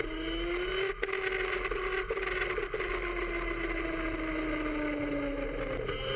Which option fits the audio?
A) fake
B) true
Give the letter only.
B